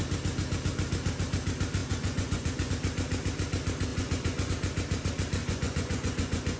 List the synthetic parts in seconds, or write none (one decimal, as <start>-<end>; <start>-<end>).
1.8-2.7; 3.9-4.5; 5.4-6.6